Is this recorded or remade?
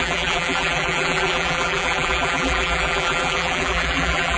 remade